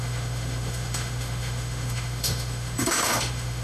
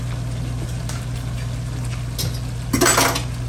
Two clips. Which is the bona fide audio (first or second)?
second